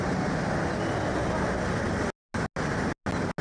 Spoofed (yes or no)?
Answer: no